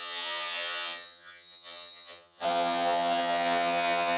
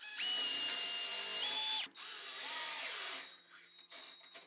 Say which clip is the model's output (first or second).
first